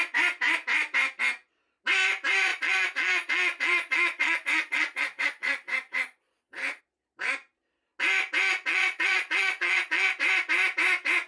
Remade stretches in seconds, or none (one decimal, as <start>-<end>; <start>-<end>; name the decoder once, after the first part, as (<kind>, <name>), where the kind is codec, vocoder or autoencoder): 2.5-6.8 (vocoder, Vocos); 8.7-10.1